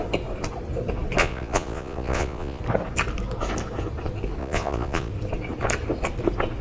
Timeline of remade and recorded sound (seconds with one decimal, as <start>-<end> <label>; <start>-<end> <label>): 0.0-1.2 recorded; 1.2-2.6 remade; 2.6-4.4 recorded; 4.4-5.1 remade; 5.1-6.6 recorded